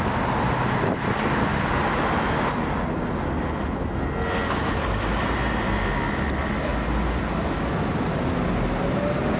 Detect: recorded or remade recorded